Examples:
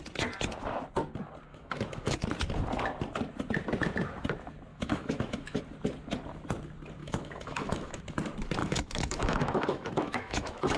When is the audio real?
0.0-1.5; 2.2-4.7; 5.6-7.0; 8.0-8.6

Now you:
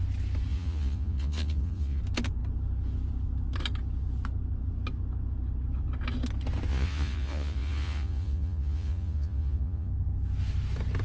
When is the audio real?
0.0-0.5; 2.0-6.7; 9.9-11.0

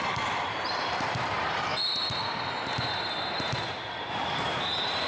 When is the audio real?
1.7-2.7